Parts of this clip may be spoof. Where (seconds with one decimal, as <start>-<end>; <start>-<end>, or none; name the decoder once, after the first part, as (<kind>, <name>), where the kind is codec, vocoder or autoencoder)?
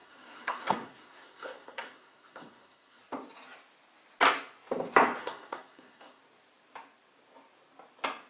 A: 0.0-3.0 (codec, SNAC); 5.2-6.2